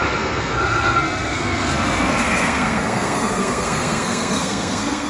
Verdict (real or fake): fake